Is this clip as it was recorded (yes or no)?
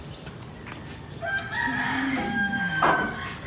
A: yes